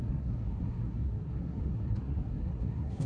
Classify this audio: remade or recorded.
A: remade